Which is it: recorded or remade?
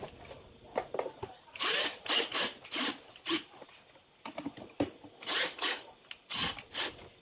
recorded